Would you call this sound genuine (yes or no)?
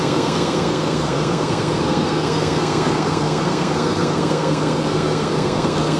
no